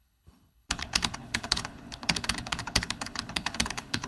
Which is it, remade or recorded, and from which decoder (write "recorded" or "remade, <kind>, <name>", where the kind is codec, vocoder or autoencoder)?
remade, codec, HILCodec